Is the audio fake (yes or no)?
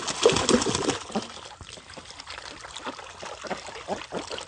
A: no